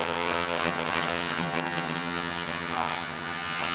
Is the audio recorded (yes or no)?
no